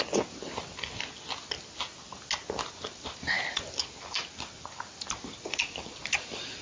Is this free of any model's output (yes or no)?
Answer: yes